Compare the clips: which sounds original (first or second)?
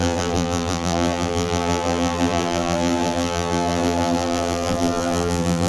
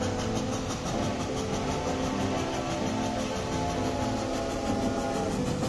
second